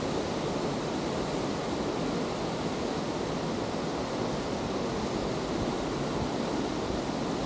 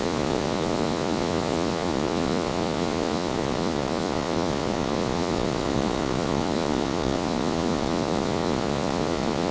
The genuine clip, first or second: first